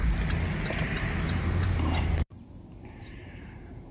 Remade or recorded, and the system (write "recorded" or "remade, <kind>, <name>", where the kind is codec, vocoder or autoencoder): remade, vocoder, BigVGAN v2